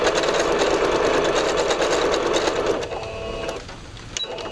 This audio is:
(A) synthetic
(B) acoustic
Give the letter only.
B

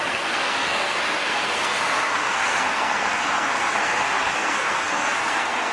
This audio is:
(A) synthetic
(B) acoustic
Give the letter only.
A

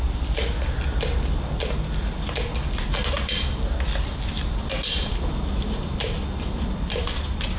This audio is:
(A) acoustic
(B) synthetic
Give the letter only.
A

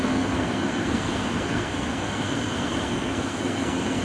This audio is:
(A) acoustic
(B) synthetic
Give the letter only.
B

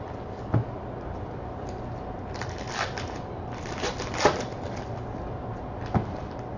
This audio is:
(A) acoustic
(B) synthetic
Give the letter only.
A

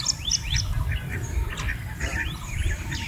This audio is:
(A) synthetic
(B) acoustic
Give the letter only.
A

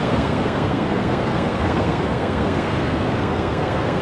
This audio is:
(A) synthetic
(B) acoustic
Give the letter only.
A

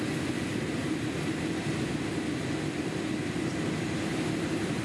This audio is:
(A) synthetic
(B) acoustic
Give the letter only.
B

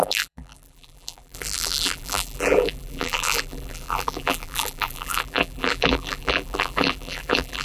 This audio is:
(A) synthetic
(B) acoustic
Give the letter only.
A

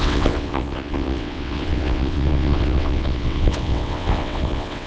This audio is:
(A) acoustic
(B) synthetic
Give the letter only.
B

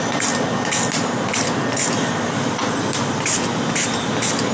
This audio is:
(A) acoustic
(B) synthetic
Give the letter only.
A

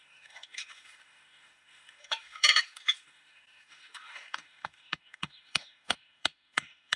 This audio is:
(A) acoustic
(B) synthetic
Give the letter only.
B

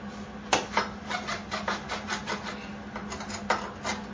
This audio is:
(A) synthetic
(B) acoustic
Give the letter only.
B